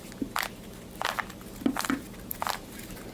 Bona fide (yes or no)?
yes